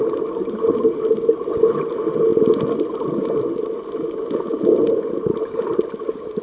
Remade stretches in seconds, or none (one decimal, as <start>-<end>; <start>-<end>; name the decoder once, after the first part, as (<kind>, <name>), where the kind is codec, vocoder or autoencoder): none